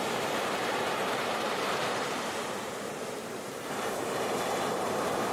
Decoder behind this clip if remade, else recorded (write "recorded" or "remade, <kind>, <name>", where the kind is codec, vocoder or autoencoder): remade, vocoder, BigVGAN v2